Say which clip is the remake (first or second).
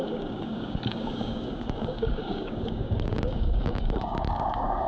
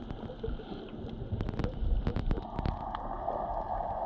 first